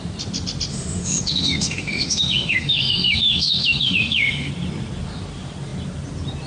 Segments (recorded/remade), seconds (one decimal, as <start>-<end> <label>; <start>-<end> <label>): 0.0-0.7 recorded; 0.7-4.5 remade; 4.5-6.5 recorded